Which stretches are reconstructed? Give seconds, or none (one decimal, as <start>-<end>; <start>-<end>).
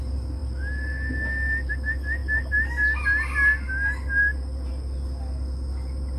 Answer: none